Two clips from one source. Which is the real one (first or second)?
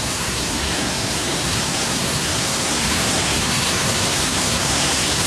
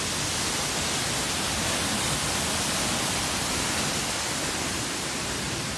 second